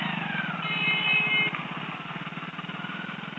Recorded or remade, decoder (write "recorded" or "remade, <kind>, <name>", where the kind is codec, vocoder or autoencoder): recorded